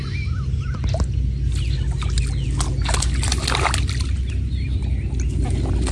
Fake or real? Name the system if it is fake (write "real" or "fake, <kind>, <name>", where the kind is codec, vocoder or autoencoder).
real